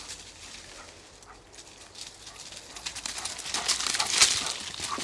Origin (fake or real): real